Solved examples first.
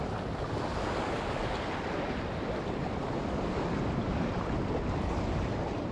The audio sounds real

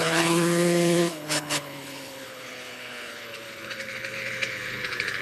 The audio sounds fake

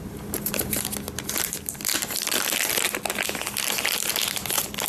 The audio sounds real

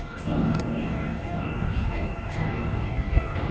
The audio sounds fake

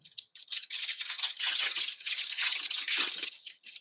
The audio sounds fake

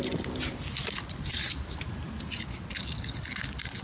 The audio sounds real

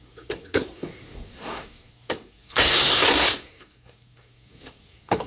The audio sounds fake